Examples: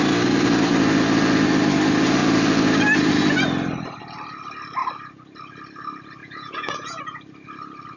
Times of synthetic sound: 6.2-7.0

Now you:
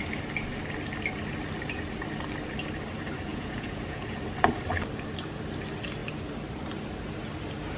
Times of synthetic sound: 3.3-4.2

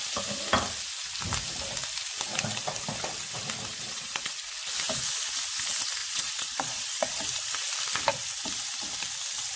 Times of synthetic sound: 3.7-4.5; 6.0-7.1

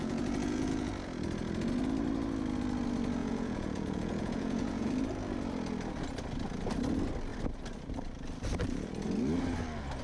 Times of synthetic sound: 0.0-0.9; 3.2-4.9